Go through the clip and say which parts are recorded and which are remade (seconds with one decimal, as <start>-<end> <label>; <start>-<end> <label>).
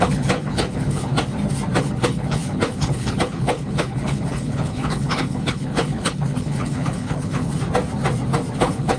0.0-1.1 remade; 1.1-1.8 recorded; 1.8-7.5 remade; 7.5-8.6 recorded; 8.6-9.0 remade